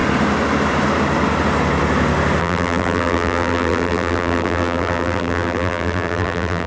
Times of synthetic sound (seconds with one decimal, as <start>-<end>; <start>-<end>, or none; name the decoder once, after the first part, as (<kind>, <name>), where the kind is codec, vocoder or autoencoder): 2.4-6.7 (vocoder, BigVGAN v2)